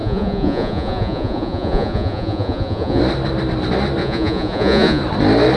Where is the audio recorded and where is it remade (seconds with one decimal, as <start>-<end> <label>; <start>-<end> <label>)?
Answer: 0.0-3.0 remade; 3.0-4.0 recorded; 4.0-5.0 remade; 5.0-5.6 recorded